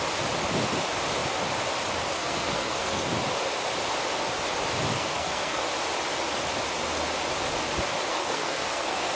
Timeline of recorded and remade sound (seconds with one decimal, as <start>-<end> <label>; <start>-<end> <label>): 0.0-2.2 recorded; 2.2-3.1 remade; 3.1-4.9 recorded; 4.9-5.6 remade; 5.6-8.1 recorded; 8.1-9.2 remade